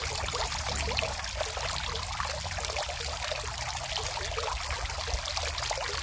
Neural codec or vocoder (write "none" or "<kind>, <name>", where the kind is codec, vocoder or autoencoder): none